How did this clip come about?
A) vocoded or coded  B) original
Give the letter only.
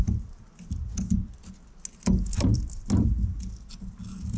B